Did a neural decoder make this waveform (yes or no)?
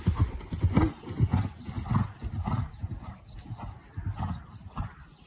no